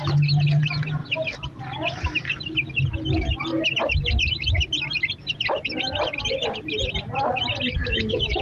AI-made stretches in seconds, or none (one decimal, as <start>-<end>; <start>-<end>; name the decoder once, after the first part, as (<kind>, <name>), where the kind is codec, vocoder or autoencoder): 7.8-8.4 (autoencoder, DAC-VAE)